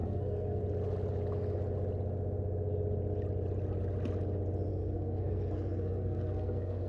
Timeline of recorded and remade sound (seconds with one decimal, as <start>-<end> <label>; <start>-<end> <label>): 0.0-0.6 remade; 0.6-4.7 recorded; 4.7-6.9 remade